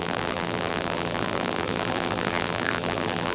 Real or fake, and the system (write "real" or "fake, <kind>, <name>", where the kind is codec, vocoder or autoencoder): fake, vocoder, BigVGAN v2